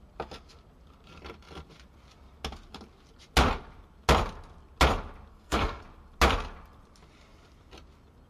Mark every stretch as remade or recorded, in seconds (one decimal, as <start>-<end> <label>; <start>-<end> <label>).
0.0-5.3 recorded; 5.3-5.8 remade; 5.8-8.3 recorded